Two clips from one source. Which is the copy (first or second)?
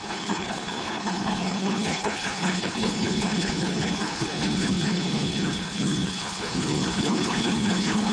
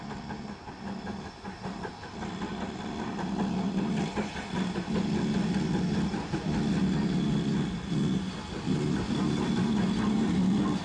first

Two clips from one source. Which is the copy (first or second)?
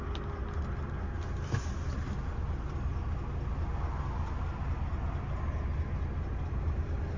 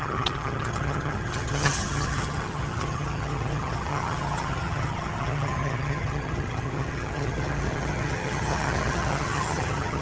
second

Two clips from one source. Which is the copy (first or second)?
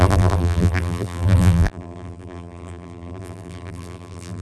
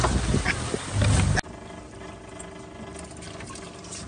first